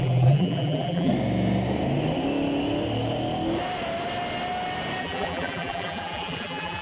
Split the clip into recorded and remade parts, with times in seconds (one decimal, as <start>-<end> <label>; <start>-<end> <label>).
0.0-1.1 remade; 1.1-5.0 recorded; 5.0-6.8 remade